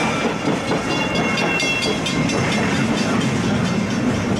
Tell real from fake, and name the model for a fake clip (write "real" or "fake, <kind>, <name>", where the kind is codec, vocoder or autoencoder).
real